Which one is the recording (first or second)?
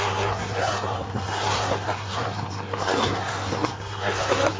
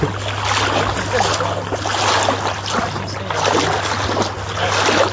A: second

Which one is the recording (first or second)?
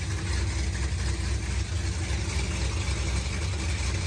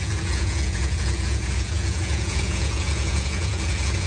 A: first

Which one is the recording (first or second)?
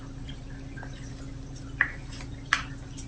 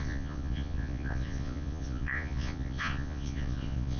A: first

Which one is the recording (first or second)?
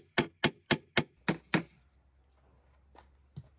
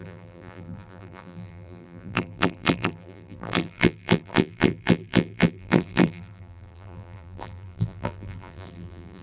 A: first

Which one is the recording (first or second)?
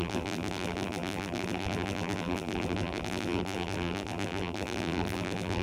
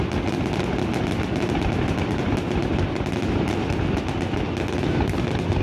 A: second